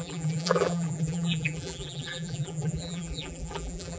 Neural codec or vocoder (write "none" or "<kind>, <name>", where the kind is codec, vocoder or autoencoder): vocoder, BigVGAN v2